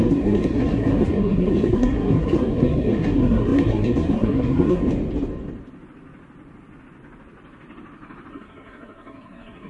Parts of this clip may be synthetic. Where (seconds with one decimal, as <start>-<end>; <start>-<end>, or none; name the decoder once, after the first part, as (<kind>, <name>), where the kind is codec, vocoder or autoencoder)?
0.0-4.8 (codec, SNAC); 8.3-9.7